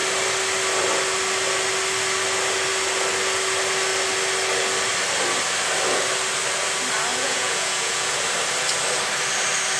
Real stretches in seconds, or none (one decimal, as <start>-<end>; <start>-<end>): 0.0-7.1; 8.2-9.8